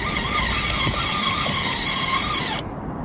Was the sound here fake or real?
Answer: real